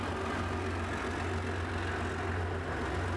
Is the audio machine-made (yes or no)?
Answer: no